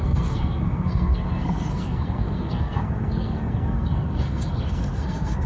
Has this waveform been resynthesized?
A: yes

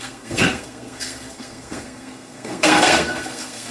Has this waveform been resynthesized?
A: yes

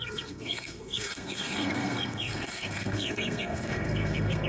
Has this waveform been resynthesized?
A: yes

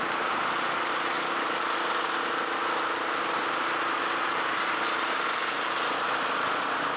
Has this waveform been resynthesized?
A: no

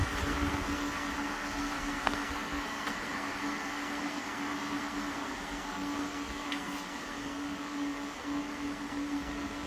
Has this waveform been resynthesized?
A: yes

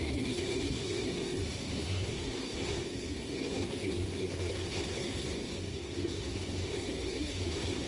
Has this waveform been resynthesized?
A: yes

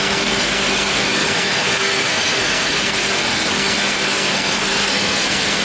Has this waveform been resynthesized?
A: yes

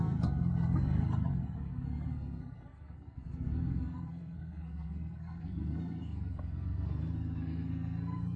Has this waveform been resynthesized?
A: yes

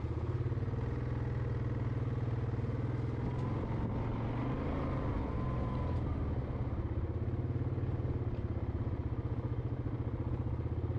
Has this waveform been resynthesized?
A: no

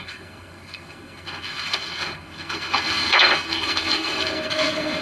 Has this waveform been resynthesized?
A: yes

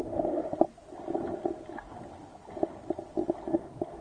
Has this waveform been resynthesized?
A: no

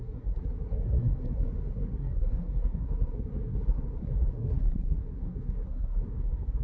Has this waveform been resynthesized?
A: yes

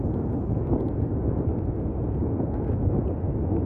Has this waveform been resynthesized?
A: no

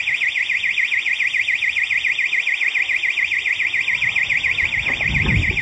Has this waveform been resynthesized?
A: no